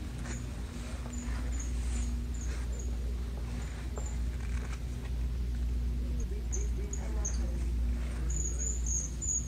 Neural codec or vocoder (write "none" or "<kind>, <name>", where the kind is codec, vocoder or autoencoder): none